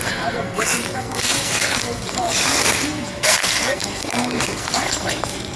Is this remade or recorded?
remade